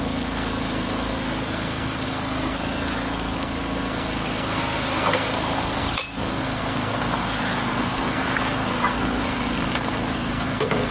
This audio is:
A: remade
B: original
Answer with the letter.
A